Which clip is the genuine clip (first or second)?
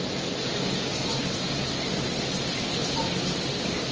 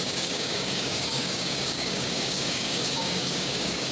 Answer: first